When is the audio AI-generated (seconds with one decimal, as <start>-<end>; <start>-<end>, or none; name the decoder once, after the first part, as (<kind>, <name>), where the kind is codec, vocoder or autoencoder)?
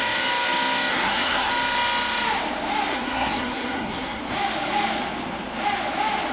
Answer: 0.9-1.5 (codec, SNAC); 2.9-4.2